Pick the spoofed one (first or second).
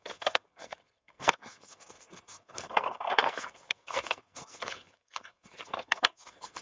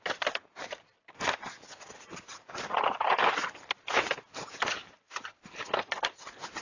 first